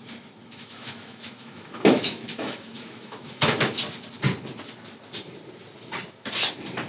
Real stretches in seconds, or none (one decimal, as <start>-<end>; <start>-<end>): 0.0-0.4; 3.8-6.9